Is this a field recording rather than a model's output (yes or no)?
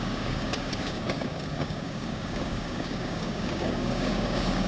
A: no